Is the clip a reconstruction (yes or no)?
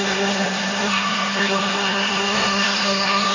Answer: yes